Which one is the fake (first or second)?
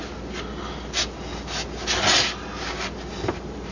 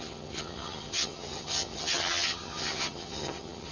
second